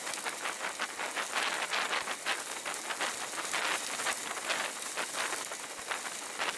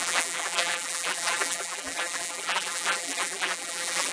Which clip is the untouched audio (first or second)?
first